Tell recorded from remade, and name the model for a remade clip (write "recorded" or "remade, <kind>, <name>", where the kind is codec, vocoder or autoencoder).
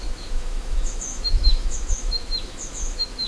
remade, autoencoder, DAC-VAE